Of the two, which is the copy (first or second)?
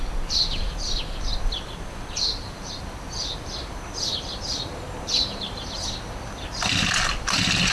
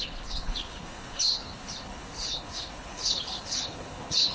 second